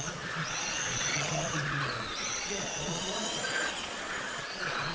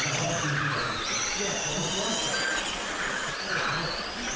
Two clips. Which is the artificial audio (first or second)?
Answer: first